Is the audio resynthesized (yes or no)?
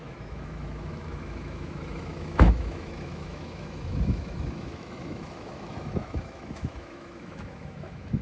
yes